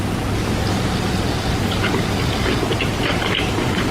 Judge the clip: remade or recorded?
recorded